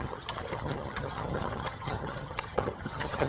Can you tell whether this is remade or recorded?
remade